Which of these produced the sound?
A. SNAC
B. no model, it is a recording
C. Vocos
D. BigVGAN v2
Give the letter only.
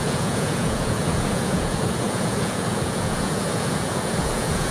C